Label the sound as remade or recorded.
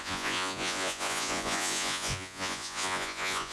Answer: remade